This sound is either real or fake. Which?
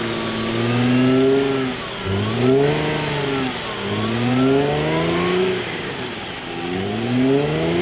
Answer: real